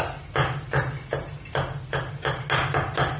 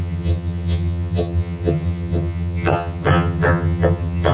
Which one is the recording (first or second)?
first